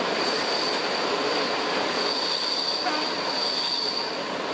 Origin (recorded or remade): recorded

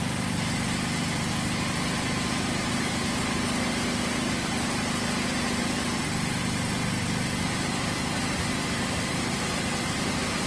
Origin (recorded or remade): recorded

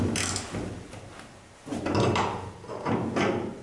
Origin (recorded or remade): recorded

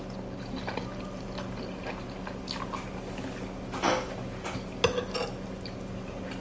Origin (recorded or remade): recorded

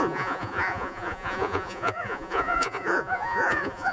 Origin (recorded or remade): remade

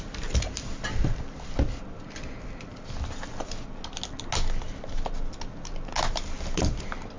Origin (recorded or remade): recorded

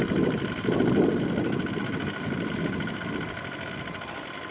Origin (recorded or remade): recorded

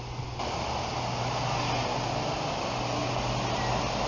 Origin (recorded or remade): recorded